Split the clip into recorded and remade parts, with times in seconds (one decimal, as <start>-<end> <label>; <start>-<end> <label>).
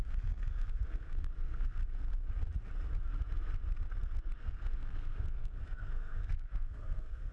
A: 0.0-1.8 remade; 1.8-4.0 recorded; 4.0-7.3 remade